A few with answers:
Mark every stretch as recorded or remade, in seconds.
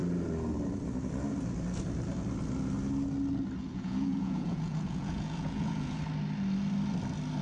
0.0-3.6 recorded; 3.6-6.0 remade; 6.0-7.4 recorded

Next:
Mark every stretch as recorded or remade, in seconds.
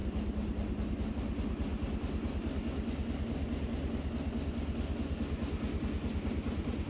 0.0-6.9 recorded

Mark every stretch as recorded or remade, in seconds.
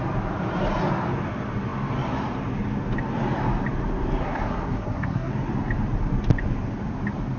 0.0-4.2 recorded; 4.2-5.3 remade; 5.3-7.4 recorded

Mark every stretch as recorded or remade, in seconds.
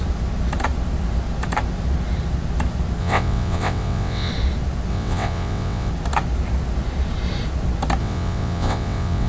0.0-3.0 recorded; 3.0-4.3 remade; 4.3-4.9 recorded; 4.9-5.9 remade; 5.9-8.0 recorded; 8.0-9.3 remade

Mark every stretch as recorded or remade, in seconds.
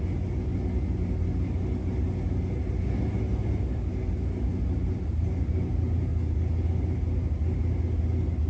0.0-8.5 recorded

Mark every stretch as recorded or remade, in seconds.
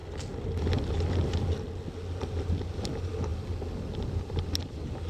0.0-5.1 recorded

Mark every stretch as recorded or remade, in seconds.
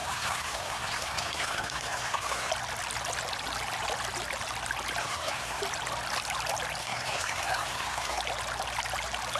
0.0-2.5 remade; 2.5-5.0 recorded; 5.0-5.6 remade; 5.6-6.8 recorded; 6.8-8.2 remade; 8.2-9.4 recorded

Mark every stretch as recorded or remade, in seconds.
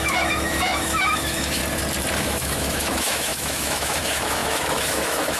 0.0-1.6 remade; 1.6-2.2 recorded; 2.2-5.4 remade